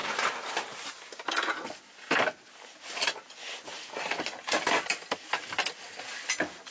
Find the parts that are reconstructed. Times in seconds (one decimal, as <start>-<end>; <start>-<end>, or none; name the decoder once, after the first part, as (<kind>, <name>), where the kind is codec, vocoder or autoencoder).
0.0-1.3 (vocoder, BigVGAN v2)